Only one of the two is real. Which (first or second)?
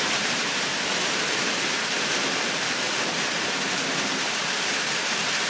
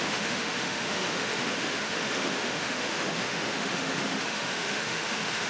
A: first